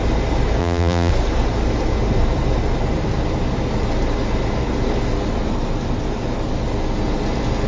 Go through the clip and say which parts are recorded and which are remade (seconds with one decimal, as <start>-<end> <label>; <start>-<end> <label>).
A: 0.0-0.6 recorded; 0.6-1.1 remade; 1.1-7.7 recorded